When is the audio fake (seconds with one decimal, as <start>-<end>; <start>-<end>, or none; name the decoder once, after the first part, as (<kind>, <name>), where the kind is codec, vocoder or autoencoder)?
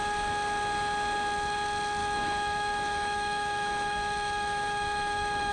2.0-5.5 (autoencoder, DAC-VAE)